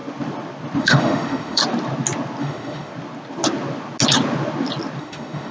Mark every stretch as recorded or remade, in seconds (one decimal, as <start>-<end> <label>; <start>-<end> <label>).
0.0-0.8 recorded; 0.8-1.6 remade; 1.6-2.4 recorded; 2.4-2.9 remade; 2.9-5.0 recorded; 5.0-5.5 remade